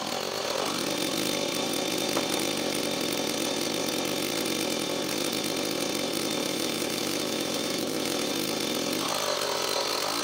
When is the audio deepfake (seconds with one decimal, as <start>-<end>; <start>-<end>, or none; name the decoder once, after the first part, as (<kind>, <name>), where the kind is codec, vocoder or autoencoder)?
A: 6.4-8.3 (autoencoder, DAC-VAE)